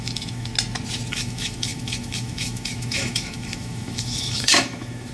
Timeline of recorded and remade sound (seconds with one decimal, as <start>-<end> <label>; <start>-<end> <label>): 0.0-0.5 remade; 0.5-1.1 recorded; 1.1-5.1 remade